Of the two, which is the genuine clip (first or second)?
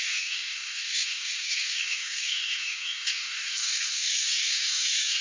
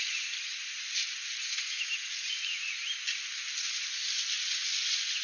second